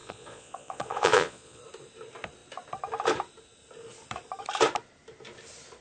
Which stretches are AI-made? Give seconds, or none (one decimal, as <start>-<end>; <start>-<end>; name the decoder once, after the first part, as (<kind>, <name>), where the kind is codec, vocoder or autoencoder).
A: 0.0-1.6 (vocoder, Vocos)